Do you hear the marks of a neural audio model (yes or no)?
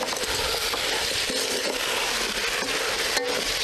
no